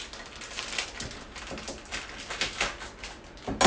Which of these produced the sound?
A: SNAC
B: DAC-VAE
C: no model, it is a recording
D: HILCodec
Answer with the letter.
C